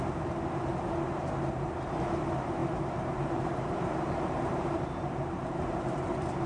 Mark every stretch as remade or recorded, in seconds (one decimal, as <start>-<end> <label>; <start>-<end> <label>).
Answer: 0.0-2.6 recorded; 2.6-6.1 remade; 6.1-6.5 recorded